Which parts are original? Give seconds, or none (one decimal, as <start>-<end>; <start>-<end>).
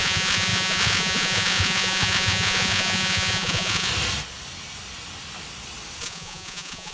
3.9-6.0